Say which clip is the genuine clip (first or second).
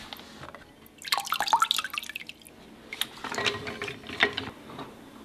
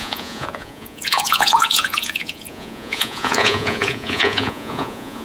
first